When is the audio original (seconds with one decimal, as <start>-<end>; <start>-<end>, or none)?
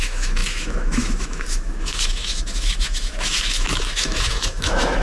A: none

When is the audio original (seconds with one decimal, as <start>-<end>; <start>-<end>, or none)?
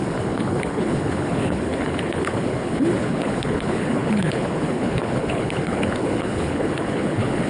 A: none